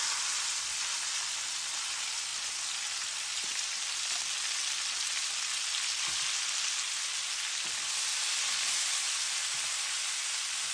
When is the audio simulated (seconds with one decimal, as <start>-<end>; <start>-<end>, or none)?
none